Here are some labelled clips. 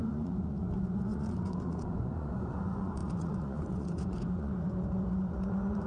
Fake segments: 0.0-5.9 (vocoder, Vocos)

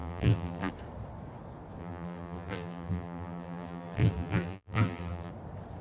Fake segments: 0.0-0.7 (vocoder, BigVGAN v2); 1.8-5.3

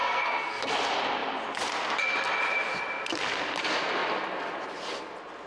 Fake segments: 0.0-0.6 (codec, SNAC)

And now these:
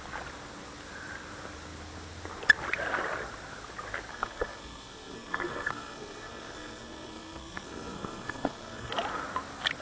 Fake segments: 4.1-8.9 (codec, SNAC)

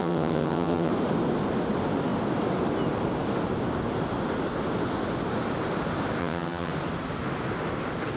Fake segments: 0.0-0.9 (vocoder, HiFi-GAN); 6.2-6.7

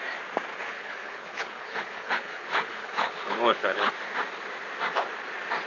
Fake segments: 0.5-3.9 (codec, HILCodec)

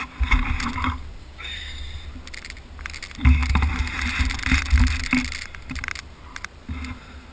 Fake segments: 1.2-1.8 (codec, DAC)